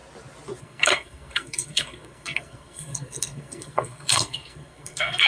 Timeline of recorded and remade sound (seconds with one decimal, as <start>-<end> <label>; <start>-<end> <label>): 0.0-0.6 recorded; 0.6-5.3 remade